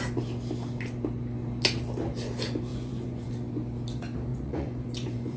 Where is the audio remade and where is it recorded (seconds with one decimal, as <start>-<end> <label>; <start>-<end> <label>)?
0.0-2.7 recorded; 2.7-3.3 remade; 3.3-4.3 recorded; 4.3-5.4 remade